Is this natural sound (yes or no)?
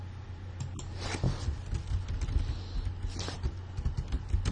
yes